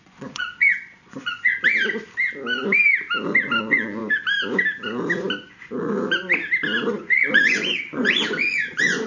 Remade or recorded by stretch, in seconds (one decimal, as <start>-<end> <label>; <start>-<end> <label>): 0.0-1.5 remade; 1.5-3.6 recorded; 3.6-4.0 remade; 4.0-6.9 recorded; 6.9-9.1 remade